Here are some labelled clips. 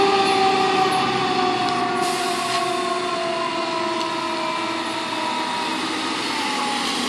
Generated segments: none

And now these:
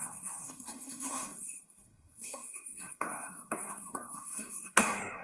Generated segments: 0.0-5.2 (codec, SNAC)

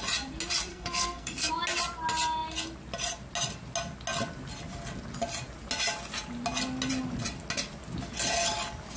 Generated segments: 0.7-1.5 (codec, SNAC)